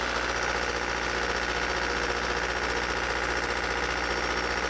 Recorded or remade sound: recorded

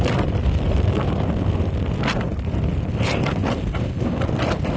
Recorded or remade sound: recorded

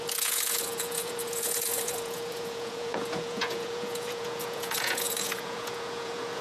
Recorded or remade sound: remade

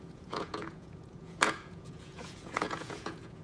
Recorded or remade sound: remade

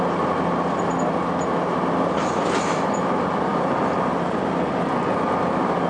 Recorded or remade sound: recorded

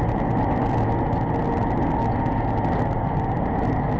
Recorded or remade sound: recorded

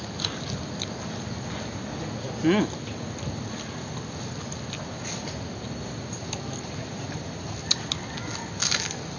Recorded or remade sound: recorded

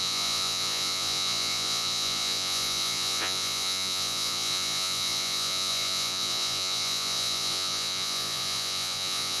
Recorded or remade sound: remade